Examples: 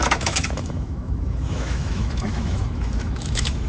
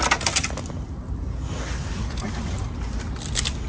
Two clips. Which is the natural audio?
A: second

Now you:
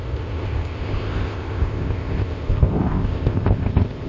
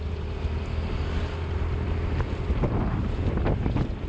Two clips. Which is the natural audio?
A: second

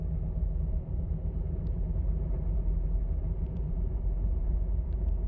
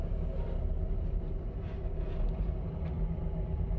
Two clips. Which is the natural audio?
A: second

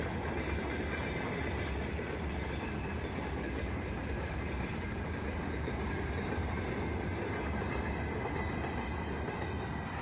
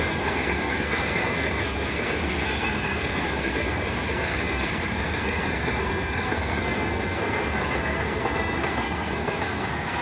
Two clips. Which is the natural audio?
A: first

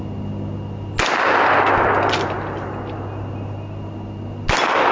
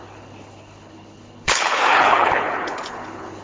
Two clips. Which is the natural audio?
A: first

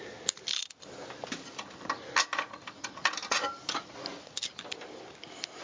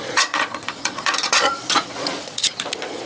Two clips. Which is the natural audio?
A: first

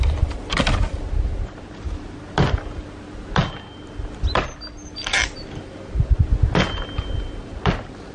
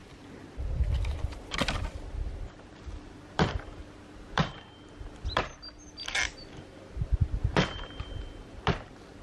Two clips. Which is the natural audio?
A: first